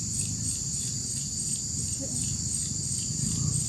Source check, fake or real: real